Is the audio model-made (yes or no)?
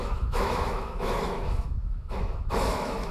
yes